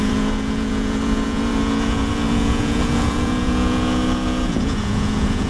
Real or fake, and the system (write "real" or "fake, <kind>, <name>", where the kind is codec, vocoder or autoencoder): fake, vocoder, Vocos